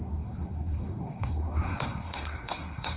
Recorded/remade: remade